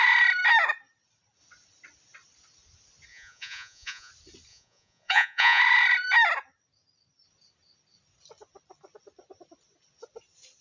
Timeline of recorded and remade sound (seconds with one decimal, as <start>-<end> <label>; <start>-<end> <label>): 0.0-3.1 recorded; 3.1-4.1 remade; 4.1-4.5 recorded; 4.5-5.6 remade; 5.6-10.6 recorded